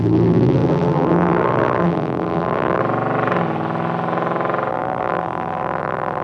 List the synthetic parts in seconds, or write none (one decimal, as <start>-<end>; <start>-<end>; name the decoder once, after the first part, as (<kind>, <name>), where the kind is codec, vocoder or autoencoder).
0.0-2.8 (vocoder, BigVGAN v2); 4.7-6.2